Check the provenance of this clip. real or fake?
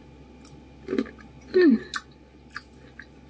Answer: real